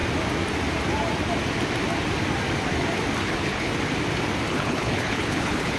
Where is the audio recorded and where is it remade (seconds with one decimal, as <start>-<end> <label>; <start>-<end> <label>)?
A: 0.0-3.2 recorded; 3.2-3.7 remade; 3.7-4.5 recorded; 4.5-5.8 remade